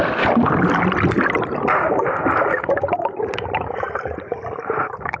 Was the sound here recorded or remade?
recorded